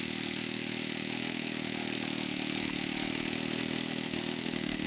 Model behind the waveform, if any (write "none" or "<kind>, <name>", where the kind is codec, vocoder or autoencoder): autoencoder, DAC-VAE